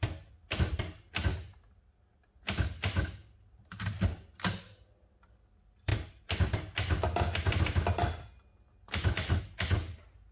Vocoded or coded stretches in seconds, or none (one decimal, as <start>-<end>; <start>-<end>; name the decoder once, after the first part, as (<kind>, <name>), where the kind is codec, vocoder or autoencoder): none